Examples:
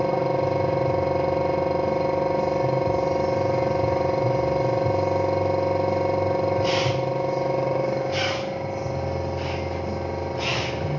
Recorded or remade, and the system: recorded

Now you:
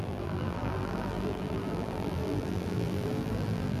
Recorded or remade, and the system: remade, vocoder, BigVGAN v2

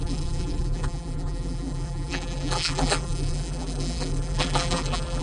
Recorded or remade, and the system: remade, vocoder, BigVGAN v2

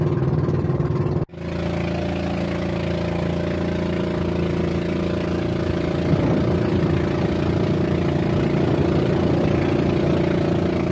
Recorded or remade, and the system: recorded